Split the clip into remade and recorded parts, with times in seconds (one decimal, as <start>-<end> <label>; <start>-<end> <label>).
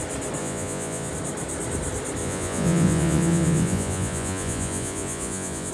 0.0-0.4 recorded; 0.4-1.1 remade; 1.1-2.2 recorded; 2.2-5.7 remade